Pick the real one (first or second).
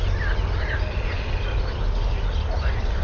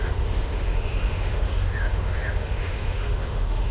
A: first